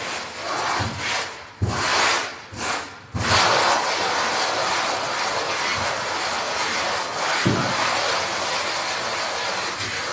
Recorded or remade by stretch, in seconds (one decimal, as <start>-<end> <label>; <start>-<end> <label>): 0.0-10.1 recorded